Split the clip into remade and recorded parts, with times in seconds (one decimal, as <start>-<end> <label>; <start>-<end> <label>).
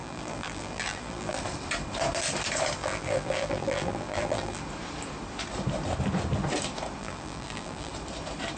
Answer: 0.0-1.4 remade; 1.4-2.8 recorded; 2.8-4.6 remade; 4.6-7.0 recorded; 7.0-7.9 remade; 7.9-8.6 recorded